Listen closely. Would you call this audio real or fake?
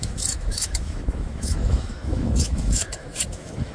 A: fake